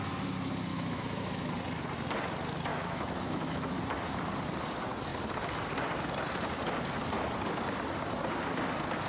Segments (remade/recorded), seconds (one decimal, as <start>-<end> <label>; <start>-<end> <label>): 0.0-0.7 recorded; 0.7-1.5 remade; 1.5-2.7 recorded; 2.7-3.8 remade; 3.8-9.1 recorded

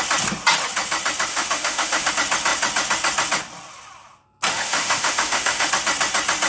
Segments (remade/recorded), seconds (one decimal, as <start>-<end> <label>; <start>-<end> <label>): 0.0-1.3 recorded; 1.3-2.1 remade; 2.1-4.5 recorded; 4.5-5.7 remade; 5.7-6.5 recorded